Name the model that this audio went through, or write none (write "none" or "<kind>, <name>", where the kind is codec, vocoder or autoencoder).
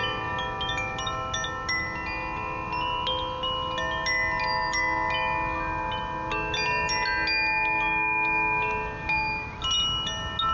none